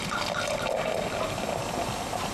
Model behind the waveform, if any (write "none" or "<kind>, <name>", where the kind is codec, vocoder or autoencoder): none